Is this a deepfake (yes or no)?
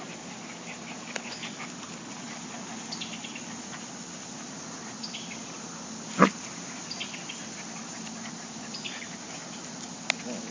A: no